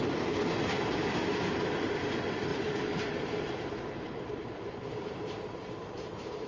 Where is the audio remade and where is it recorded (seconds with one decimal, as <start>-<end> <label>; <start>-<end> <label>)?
0.0-2.5 recorded; 2.5-6.5 remade